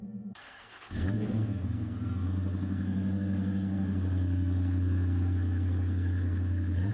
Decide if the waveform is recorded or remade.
remade